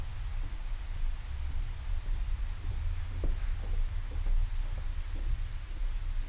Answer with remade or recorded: recorded